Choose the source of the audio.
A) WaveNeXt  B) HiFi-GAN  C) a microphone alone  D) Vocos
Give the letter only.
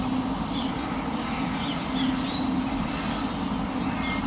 C